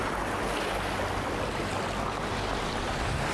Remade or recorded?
recorded